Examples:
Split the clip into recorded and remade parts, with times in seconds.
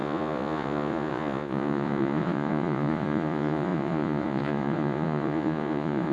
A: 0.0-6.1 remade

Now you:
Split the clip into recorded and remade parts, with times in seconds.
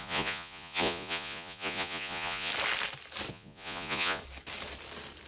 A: 0.0-2.5 remade; 2.5-3.3 recorded; 3.3-4.2 remade; 4.2-5.3 recorded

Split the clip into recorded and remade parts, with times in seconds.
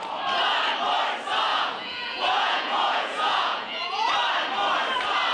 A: 0.0-1.5 recorded; 1.5-4.1 remade; 4.1-5.3 recorded